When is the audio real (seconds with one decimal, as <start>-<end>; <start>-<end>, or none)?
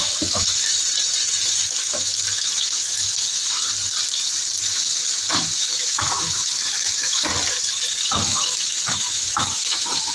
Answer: 0.7-1.4; 3.7-4.6; 7.3-8.0